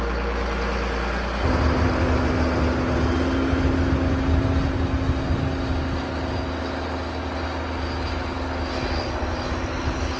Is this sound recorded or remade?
recorded